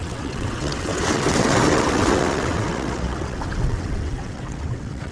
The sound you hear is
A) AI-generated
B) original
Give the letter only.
A